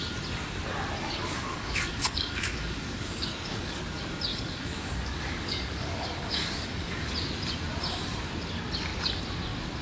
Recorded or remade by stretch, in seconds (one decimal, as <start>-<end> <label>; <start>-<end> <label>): 0.0-1.0 recorded; 1.0-3.8 remade; 3.8-4.3 recorded; 4.3-7.1 remade; 7.1-9.8 recorded